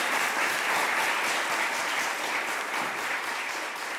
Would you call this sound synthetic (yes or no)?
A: no